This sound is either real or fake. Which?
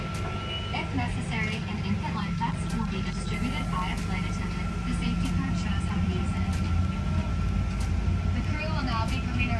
real